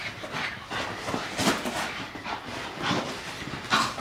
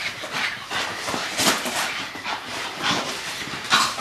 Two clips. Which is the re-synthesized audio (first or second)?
second